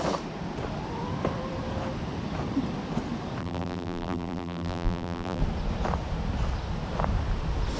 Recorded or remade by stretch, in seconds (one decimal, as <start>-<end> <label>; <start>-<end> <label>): 0.0-3.4 recorded; 3.4-5.4 remade; 5.4-7.8 recorded